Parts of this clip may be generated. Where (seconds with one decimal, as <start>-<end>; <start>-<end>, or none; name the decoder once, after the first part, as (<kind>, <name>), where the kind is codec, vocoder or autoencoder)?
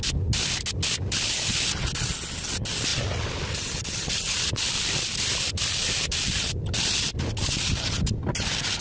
2.9-8.0 (vocoder, BigVGAN v2)